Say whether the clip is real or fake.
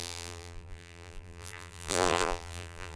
fake